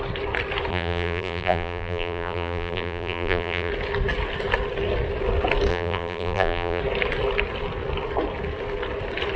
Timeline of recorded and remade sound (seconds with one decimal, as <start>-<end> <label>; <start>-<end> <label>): 0.0-0.7 recorded; 0.7-3.7 remade; 3.7-5.7 recorded; 5.7-6.8 remade; 6.8-9.4 recorded